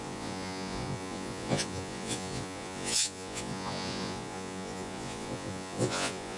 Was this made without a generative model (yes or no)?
no